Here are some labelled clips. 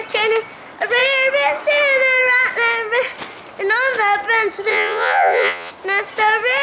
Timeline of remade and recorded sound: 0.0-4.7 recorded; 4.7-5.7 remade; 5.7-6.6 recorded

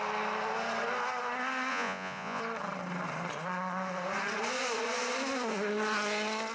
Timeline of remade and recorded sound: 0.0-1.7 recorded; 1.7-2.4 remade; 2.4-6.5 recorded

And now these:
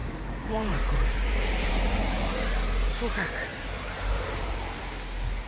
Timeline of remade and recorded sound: 0.0-1.7 remade; 1.7-3.5 recorded; 3.5-4.8 remade; 4.8-5.5 recorded